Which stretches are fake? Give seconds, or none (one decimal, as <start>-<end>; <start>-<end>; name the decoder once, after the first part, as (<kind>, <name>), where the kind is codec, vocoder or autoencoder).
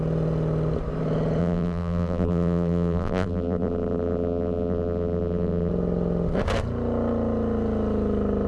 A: 1.4-5.7 (vocoder, BigVGAN v2)